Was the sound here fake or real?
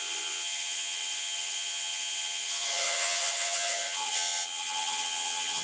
fake